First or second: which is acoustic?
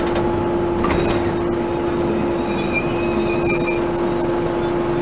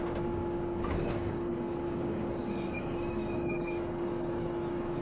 first